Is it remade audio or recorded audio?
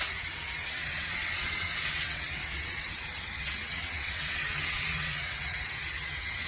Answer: remade